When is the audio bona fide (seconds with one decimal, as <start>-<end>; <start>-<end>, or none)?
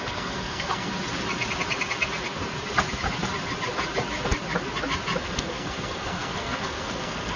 0.9-5.2